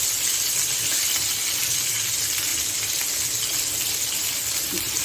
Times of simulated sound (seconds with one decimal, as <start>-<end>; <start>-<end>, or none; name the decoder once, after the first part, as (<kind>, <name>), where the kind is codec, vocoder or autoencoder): none